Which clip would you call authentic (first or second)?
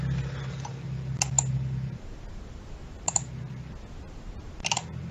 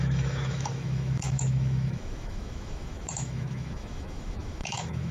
first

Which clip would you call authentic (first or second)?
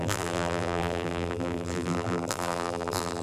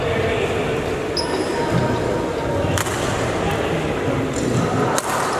second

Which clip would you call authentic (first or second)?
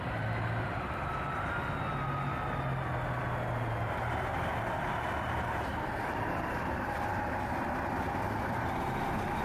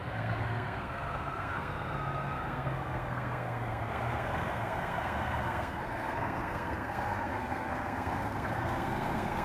first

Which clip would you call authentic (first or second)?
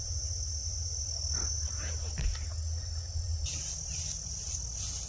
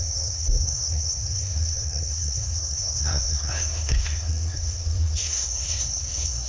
first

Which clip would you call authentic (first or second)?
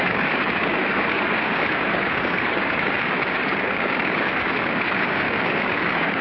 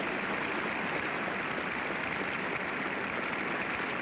second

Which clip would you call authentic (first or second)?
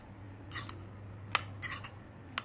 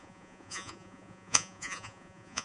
first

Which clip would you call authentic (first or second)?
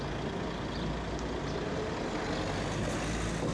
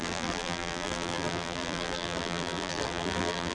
first